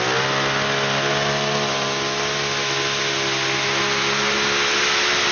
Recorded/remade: recorded